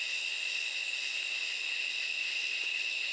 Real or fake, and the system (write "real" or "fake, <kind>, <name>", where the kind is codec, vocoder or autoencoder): real